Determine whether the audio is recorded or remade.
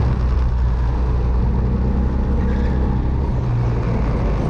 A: recorded